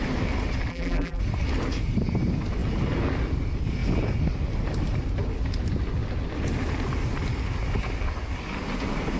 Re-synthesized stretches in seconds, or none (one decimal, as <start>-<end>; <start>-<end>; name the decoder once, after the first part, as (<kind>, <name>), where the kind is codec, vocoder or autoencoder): 0.7-1.2 (vocoder, BigVGAN v2)